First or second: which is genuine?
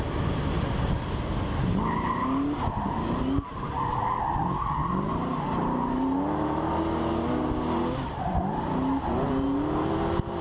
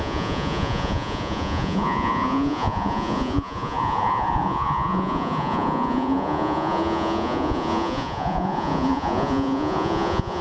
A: first